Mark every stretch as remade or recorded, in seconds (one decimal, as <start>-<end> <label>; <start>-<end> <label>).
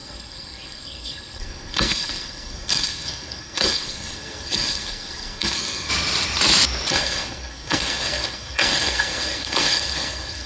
0.0-5.9 remade; 5.9-6.9 recorded; 6.9-10.5 remade